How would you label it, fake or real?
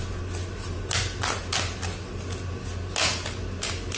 real